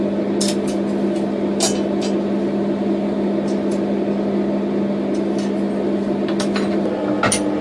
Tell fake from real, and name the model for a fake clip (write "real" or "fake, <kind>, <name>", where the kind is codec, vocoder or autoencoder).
real